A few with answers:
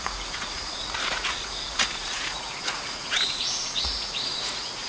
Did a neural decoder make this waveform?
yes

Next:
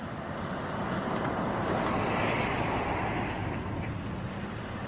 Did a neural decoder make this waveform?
no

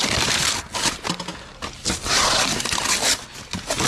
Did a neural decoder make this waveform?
no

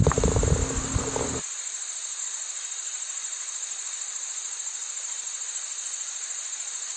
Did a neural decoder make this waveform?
no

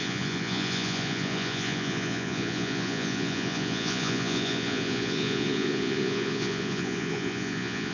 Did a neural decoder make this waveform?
yes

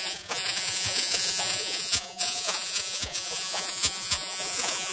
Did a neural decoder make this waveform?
yes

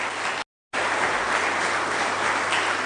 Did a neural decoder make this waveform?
no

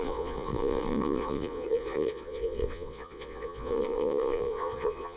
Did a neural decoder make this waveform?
yes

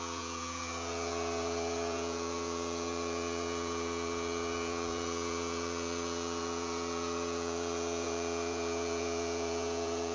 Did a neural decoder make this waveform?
yes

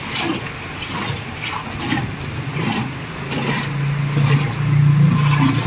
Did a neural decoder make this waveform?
no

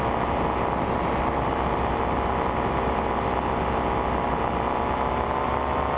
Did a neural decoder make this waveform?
no